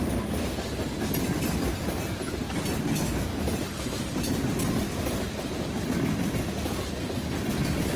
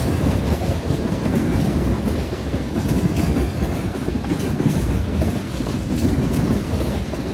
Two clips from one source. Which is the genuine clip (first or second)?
first